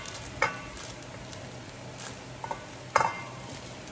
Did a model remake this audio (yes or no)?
no